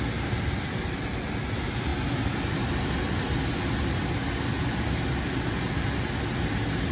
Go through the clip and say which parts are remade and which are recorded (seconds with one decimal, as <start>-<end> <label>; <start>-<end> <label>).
0.0-6.9 recorded

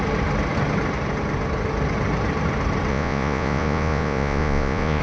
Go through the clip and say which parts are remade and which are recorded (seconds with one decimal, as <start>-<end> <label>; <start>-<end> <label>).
0.0-2.9 recorded; 2.9-5.0 remade

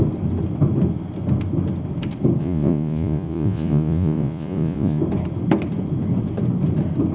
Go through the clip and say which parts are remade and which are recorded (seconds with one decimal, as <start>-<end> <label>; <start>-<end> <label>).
0.0-2.4 recorded; 2.4-5.0 remade; 5.0-7.1 recorded

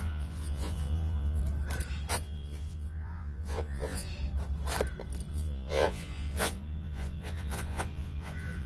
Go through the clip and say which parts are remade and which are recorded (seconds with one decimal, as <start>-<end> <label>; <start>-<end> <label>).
0.0-1.4 remade; 1.4-2.1 recorded; 2.1-4.1 remade; 4.1-5.3 recorded; 5.3-8.7 remade